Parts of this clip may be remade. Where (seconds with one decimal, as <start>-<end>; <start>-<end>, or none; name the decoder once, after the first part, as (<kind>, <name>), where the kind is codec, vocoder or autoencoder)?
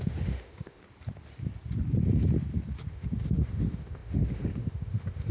0.0-0.8 (autoencoder, DAC-VAE); 2.9-5.3